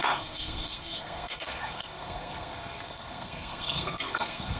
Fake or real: fake